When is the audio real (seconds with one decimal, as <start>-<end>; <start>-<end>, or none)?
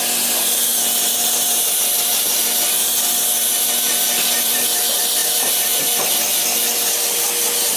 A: 0.0-7.8